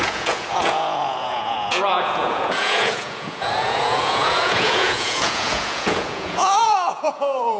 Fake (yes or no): yes